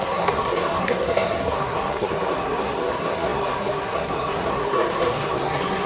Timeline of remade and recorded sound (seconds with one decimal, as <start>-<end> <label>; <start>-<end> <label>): 0.0-5.9 remade

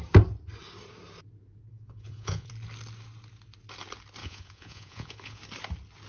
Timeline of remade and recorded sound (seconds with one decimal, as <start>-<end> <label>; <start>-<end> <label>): 0.0-1.6 recorded; 1.6-2.5 remade; 2.5-4.2 recorded; 4.2-5.4 remade; 5.4-6.1 recorded